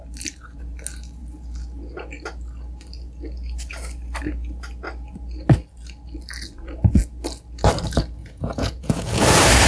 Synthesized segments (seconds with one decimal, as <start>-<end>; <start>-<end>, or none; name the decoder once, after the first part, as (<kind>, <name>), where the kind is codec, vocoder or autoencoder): 8.2-9.2 (vocoder, Vocos)